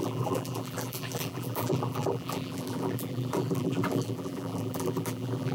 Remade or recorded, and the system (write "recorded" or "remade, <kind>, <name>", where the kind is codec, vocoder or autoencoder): remade, vocoder, BigVGAN v2